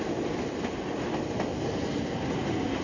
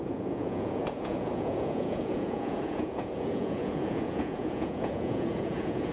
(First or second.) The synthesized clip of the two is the second